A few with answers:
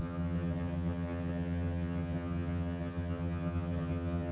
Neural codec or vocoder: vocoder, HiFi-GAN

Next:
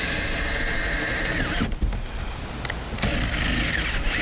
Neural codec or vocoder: none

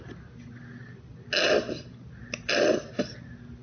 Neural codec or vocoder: none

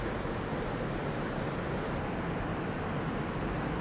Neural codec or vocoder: none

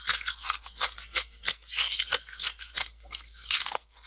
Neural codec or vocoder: codec, SNAC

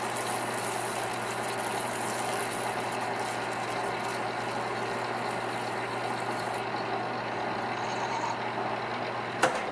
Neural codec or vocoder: none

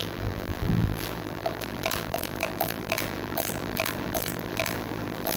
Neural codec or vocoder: vocoder, BigVGAN v2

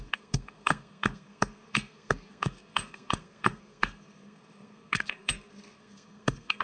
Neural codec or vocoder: codec, SNAC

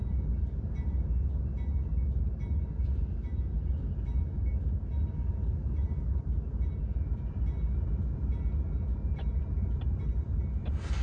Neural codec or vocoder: none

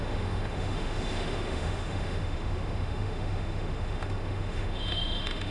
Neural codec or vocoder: autoencoder, DAC-VAE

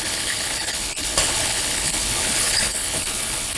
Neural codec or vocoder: codec, HILCodec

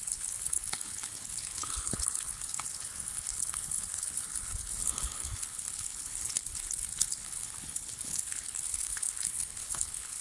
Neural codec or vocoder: codec, HILCodec